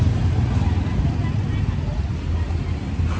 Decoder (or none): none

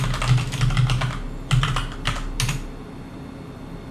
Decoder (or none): none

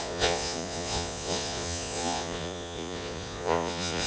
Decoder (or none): vocoder, Vocos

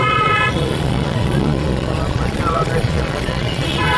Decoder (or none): vocoder, Vocos